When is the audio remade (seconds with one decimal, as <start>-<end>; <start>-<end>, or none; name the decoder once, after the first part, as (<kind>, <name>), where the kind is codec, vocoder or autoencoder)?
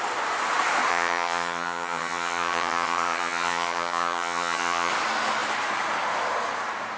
0.9-4.9 (vocoder, HiFi-GAN)